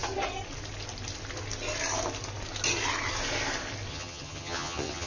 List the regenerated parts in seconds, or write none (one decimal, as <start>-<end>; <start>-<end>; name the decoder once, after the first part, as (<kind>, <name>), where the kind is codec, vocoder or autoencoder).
3.9-5.1 (vocoder, HiFi-GAN)

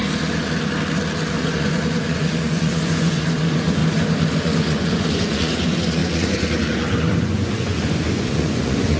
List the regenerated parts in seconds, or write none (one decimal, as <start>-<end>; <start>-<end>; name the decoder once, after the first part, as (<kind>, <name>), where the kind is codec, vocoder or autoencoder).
1.3-3.8 (vocoder, Vocos); 4.4-9.0

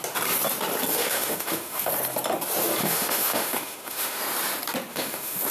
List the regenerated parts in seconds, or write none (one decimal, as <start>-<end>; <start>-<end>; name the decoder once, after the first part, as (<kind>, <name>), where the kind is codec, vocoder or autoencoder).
0.9-1.9 (autoencoder, DAC-VAE); 2.8-4.2; 4.9-5.5